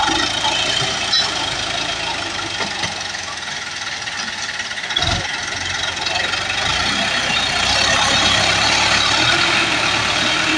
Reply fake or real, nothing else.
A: real